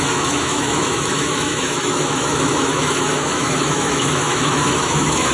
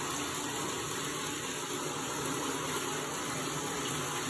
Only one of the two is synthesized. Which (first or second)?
first